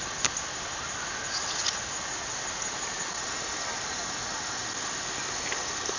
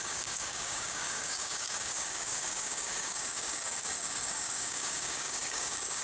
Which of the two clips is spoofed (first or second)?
second